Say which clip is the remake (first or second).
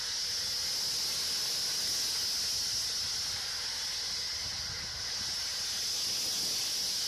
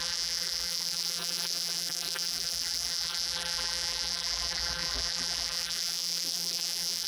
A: second